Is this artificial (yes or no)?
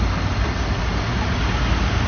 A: no